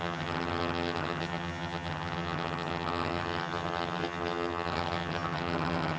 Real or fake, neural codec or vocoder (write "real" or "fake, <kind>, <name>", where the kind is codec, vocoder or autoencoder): fake, vocoder, HiFi-GAN